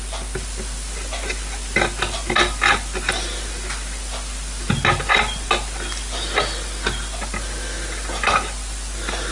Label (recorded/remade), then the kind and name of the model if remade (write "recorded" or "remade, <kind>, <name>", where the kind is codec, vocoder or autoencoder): recorded